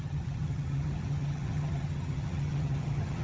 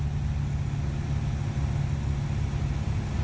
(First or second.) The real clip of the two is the second